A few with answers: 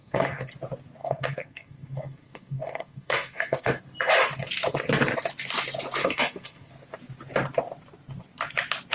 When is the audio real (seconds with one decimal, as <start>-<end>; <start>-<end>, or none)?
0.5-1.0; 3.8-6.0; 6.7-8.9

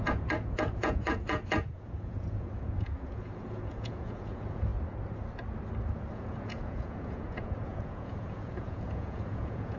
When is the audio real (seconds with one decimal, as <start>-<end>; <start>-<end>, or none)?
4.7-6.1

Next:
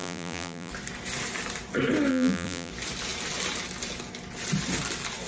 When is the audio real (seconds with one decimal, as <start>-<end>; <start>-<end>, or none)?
0.7-2.1; 2.7-5.3